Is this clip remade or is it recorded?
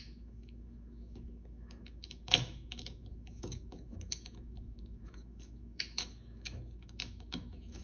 remade